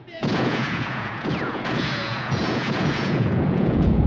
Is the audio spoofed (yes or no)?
yes